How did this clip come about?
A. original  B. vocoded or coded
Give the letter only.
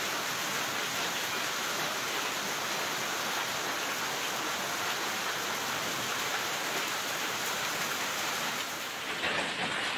A